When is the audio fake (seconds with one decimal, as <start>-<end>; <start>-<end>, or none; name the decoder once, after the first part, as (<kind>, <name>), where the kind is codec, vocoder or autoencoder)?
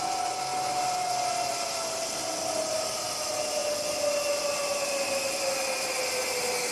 none